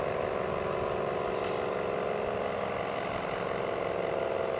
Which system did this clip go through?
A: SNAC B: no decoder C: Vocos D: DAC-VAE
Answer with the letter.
B